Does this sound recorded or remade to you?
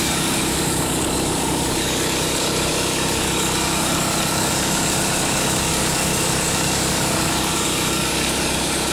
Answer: remade